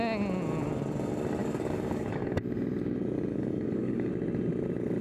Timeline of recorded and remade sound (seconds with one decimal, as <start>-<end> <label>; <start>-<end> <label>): 0.0-1.4 recorded; 1.4-2.4 remade; 2.4-3.3 recorded; 3.3-4.1 remade; 4.1-5.0 recorded